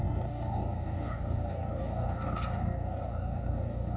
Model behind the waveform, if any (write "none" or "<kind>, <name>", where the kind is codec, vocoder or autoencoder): codec, DAC